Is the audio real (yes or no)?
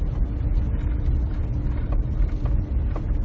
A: yes